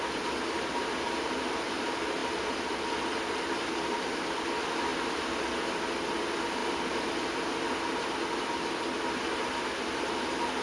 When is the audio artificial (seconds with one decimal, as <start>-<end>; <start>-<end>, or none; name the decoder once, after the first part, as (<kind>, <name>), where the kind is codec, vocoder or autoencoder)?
2.2-4.4 (vocoder, BigVGAN v2)